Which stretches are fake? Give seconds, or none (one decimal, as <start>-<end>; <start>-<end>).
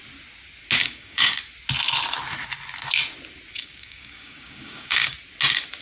0.8-1.4; 3.5-5.2